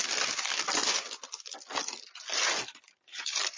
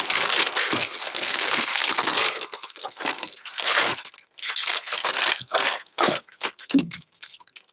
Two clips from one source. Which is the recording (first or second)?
first